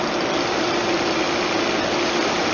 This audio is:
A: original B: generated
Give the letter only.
A